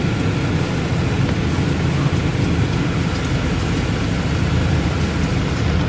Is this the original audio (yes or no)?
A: yes